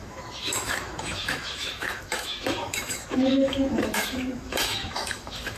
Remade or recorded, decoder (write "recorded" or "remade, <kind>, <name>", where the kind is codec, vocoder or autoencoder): remade, autoencoder, DAC-VAE